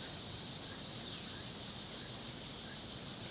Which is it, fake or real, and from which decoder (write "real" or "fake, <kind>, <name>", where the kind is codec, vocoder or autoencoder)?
real